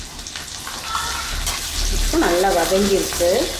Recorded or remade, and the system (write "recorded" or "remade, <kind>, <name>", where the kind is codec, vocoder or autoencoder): recorded